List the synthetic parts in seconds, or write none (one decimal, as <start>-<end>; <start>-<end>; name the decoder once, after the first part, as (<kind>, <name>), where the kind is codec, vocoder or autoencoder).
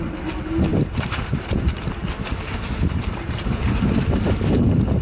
0.7-3.7 (vocoder, BigVGAN v2)